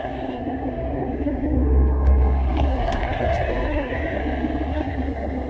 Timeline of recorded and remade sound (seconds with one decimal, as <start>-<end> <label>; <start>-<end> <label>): 0.0-4.2 remade; 4.2-4.7 recorded; 4.7-5.5 remade

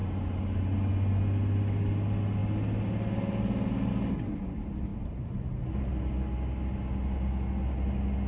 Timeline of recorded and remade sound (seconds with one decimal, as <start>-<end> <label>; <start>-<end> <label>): 0.0-8.3 recorded

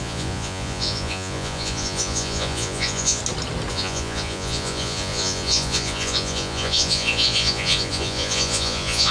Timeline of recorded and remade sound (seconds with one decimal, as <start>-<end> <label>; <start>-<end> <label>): 0.0-3.2 remade; 3.2-3.7 recorded; 3.7-9.1 remade

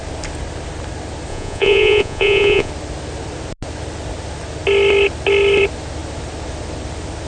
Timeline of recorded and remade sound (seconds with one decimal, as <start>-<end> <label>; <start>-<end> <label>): 0.0-1.3 recorded; 1.3-2.7 remade; 2.7-7.3 recorded

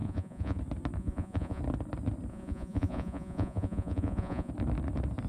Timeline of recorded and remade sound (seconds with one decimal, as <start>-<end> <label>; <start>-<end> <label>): 0.0-0.6 remade; 0.6-1.0 recorded; 1.0-1.6 remade; 1.6-2.3 recorded; 2.3-4.5 remade; 4.5-5.3 recorded

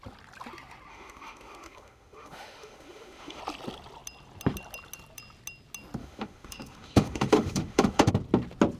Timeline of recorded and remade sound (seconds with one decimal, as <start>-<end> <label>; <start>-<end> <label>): 0.0-0.9 recorded; 0.9-3.4 remade; 3.4-6.0 recorded; 6.0-8.1 remade; 8.1-8.8 recorded

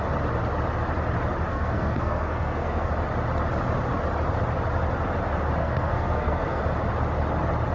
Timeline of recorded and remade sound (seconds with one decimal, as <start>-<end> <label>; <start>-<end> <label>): 0.0-1.5 recorded; 1.5-2.9 remade; 2.9-5.6 recorded; 5.6-6.6 remade; 6.6-7.7 recorded

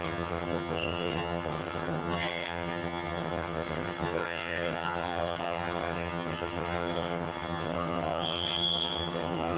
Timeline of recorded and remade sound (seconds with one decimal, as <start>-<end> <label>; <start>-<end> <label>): 0.0-9.6 remade